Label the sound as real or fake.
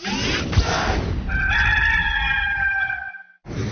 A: real